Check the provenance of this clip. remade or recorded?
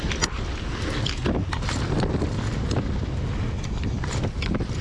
recorded